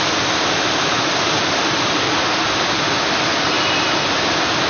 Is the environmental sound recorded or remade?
recorded